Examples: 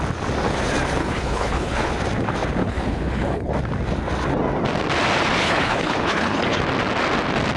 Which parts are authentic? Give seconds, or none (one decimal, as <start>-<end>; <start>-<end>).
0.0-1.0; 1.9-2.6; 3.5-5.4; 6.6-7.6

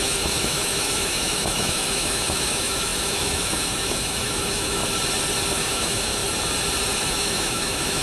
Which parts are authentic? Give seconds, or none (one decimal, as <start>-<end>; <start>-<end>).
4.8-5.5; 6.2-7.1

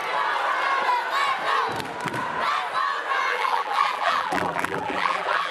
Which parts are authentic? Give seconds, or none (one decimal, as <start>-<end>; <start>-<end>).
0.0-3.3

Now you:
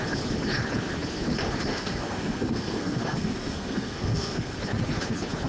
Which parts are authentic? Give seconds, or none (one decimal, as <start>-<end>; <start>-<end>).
0.0-1.7; 4.6-5.5

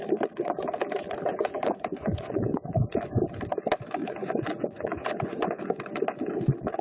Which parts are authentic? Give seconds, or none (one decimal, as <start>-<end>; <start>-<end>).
0.0-1.3; 2.8-4.0; 5.8-6.8

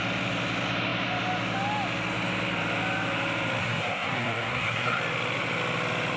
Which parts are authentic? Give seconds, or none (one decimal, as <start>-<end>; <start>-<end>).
0.0-3.6; 5.0-6.2

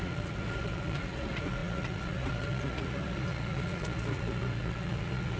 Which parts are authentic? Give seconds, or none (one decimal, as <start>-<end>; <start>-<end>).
none